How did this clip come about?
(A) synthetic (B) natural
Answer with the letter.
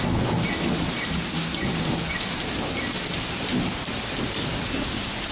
B